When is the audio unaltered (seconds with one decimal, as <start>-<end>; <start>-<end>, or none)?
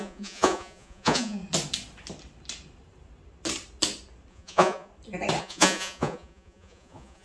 1.4-4.3; 4.9-5.4